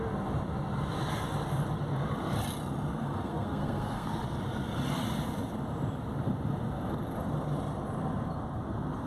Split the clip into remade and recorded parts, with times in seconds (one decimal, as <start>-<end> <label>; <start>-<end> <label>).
0.0-2.9 recorded; 2.9-4.2 remade; 4.2-9.1 recorded